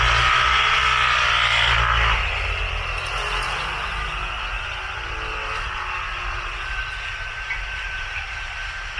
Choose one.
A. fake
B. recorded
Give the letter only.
B